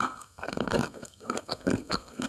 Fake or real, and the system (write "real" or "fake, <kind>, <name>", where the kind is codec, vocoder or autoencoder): fake, codec, SNAC